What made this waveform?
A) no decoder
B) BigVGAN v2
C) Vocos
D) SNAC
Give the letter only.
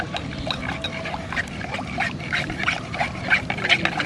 A